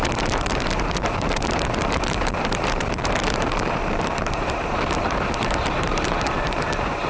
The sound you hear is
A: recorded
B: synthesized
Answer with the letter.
B